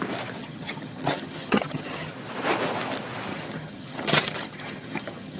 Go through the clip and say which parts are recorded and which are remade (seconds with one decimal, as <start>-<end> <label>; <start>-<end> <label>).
0.0-0.4 recorded; 0.4-2.1 remade; 2.1-3.3 recorded; 3.3-5.4 remade